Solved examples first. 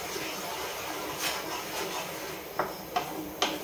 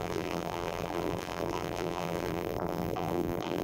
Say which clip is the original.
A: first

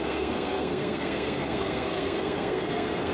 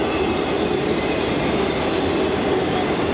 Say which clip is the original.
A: second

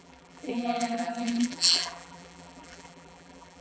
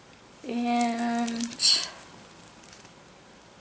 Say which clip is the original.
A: second